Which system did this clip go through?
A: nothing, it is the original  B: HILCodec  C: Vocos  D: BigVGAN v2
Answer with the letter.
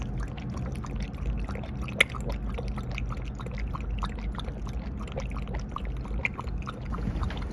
A